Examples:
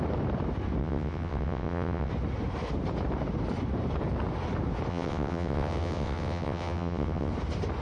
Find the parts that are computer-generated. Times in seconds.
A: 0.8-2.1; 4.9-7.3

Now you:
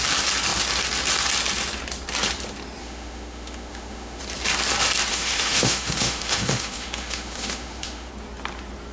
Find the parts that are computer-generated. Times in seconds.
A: 2.8-4.2; 5.1-8.1

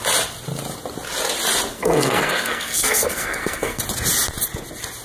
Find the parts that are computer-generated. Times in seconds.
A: 1.7-3.8